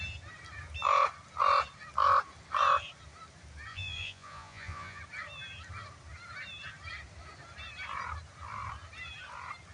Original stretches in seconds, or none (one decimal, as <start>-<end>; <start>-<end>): 0.0-3.7; 5.0-9.7